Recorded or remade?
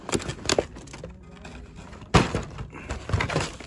recorded